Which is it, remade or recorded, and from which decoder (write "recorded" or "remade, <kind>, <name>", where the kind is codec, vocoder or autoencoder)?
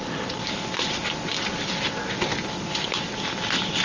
recorded